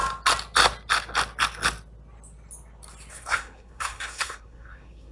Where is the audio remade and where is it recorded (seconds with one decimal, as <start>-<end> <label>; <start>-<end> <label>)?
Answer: 0.0-3.1 recorded; 3.1-5.1 remade